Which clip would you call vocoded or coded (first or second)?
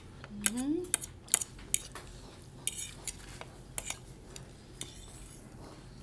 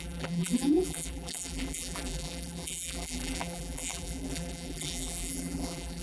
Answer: second